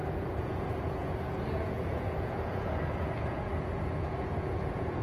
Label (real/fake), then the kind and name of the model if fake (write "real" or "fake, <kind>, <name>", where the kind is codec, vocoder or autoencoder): fake, vocoder, Vocos